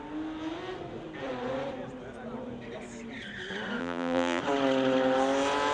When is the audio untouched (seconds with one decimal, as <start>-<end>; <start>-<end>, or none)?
0.0-3.8; 4.4-5.7